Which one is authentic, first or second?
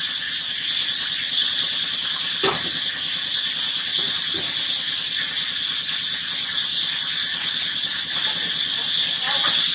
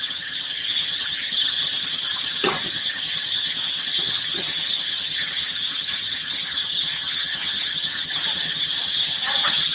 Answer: first